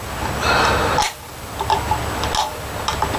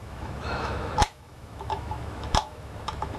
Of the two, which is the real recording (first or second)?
first